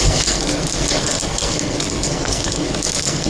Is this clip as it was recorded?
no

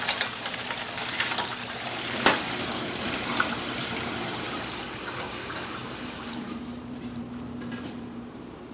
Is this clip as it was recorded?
no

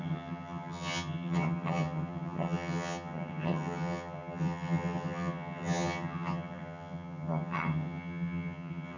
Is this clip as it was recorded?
no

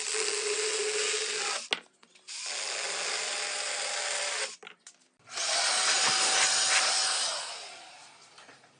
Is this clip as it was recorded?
yes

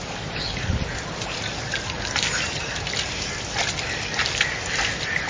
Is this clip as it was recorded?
yes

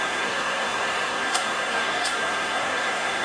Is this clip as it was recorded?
no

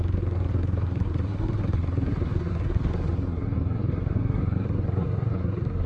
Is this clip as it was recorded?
no